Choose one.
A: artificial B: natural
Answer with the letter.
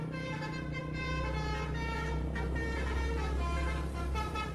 B